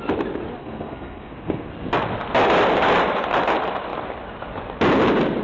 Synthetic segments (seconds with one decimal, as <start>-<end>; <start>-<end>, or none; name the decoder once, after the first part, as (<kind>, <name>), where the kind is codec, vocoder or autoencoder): 0.6-1.7 (codec, SNAC)